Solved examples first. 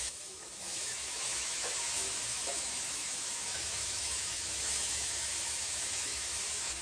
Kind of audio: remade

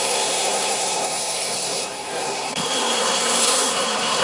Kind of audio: remade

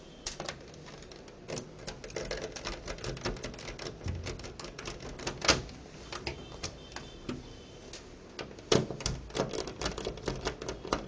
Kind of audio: recorded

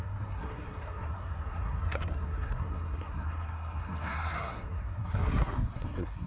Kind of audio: remade